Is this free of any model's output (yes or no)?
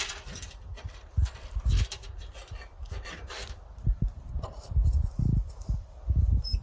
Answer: no